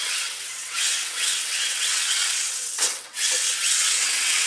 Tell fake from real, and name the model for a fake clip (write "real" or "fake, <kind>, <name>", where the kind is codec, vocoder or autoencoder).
fake, vocoder, WaveNeXt